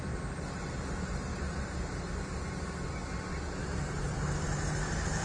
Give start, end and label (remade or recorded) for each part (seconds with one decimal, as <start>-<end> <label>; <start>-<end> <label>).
0.0-1.3 recorded; 1.3-3.2 remade; 3.2-3.6 recorded; 3.6-4.3 remade; 4.3-5.2 recorded